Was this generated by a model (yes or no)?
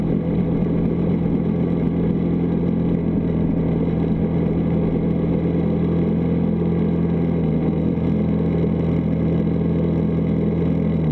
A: no